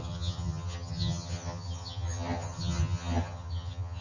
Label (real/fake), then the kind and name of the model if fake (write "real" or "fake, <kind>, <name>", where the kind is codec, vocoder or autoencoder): fake, vocoder, HiFi-GAN